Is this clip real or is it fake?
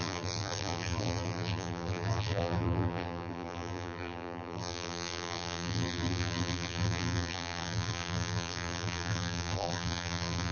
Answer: fake